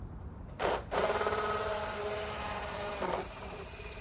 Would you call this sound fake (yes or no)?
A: yes